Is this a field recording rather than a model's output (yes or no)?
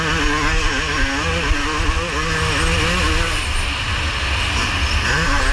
yes